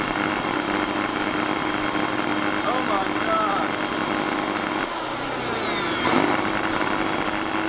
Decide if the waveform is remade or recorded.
recorded